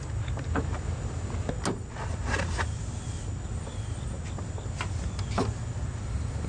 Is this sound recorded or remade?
recorded